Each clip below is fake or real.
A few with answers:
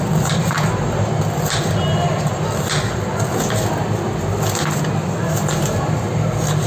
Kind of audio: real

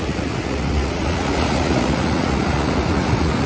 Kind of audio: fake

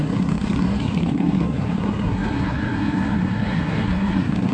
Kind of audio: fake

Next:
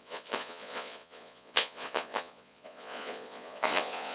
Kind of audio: fake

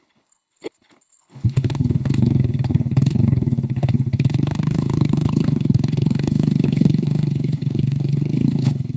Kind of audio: fake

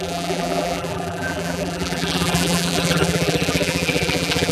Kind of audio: fake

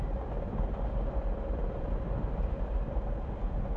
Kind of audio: real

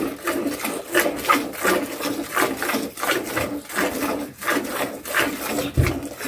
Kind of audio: real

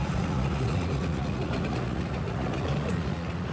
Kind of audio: fake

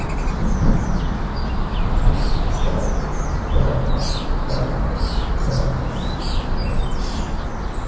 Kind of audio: real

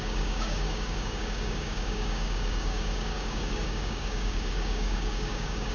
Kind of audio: fake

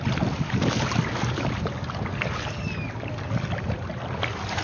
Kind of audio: real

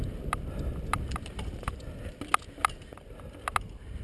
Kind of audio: real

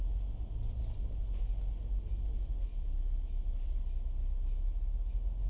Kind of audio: real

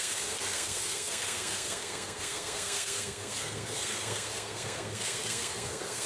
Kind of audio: fake